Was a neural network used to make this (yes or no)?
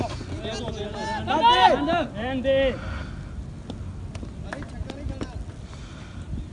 no